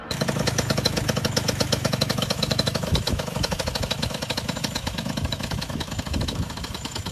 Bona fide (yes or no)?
no